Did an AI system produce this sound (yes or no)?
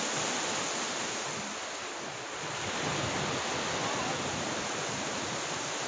no